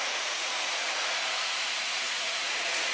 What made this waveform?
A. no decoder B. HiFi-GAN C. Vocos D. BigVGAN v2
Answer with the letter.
C